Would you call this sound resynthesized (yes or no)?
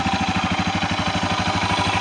no